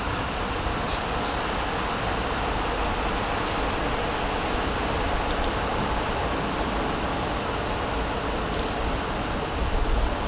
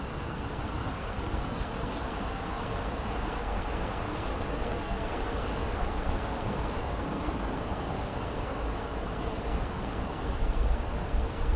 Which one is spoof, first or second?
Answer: second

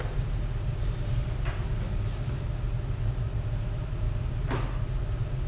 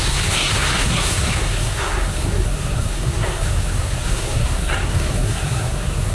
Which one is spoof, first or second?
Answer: second